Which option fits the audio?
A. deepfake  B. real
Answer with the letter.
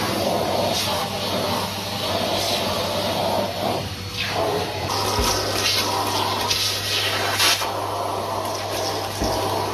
B